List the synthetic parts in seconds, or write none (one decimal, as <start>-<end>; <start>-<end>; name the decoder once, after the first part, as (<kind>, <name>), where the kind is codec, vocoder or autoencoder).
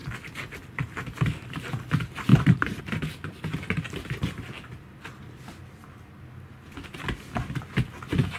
2.3-2.8 (vocoder, BigVGAN v2)